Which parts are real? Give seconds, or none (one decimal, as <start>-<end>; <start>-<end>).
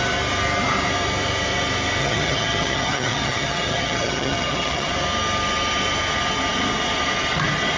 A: 0.0-2.0; 4.9-7.8